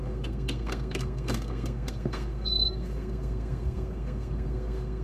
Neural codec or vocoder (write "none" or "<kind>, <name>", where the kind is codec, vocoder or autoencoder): codec, SNAC